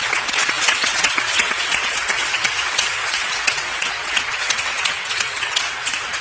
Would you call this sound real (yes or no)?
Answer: no